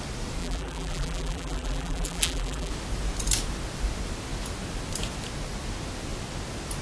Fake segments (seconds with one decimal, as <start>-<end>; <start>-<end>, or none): 0.4-2.7